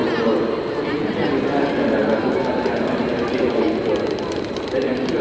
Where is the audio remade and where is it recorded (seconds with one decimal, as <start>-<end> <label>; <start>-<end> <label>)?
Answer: 0.0-0.8 recorded; 0.8-5.2 remade